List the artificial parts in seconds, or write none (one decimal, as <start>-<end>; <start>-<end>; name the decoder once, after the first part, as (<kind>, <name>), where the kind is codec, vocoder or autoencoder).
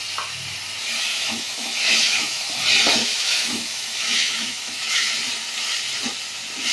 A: 1.1-2.5 (autoencoder, DAC-VAE); 3.0-5.1